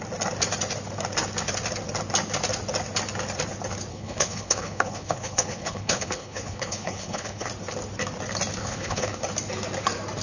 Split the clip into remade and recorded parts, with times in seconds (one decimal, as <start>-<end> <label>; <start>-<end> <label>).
0.0-3.9 recorded; 3.9-7.5 remade; 7.5-8.6 recorded; 8.6-9.2 remade; 9.2-10.2 recorded